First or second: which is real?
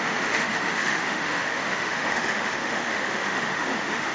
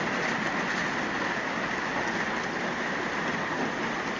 second